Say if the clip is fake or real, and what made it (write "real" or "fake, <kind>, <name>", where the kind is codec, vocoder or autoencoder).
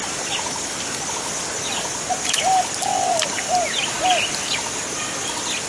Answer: real